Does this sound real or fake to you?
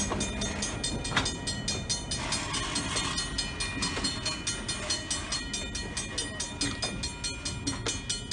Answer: real